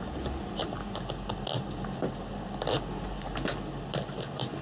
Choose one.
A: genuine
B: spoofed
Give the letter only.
A